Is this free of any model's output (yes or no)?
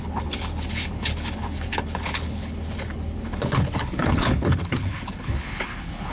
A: no